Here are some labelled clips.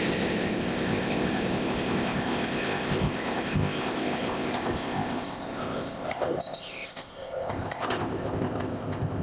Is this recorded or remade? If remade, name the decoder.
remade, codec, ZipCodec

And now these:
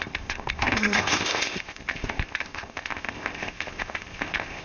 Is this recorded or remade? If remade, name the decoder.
remade, codec, ZipCodec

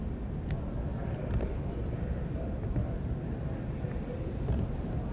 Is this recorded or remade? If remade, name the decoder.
recorded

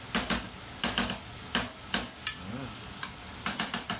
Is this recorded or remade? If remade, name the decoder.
recorded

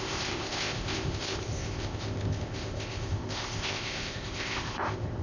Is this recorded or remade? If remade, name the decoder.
remade, codec, ZipCodec